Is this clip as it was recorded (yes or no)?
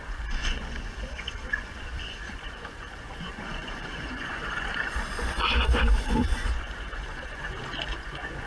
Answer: no